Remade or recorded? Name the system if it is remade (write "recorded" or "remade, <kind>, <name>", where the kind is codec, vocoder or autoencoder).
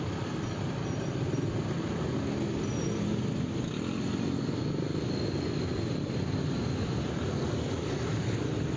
recorded